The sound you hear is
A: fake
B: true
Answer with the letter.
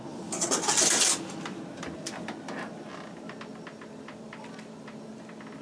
B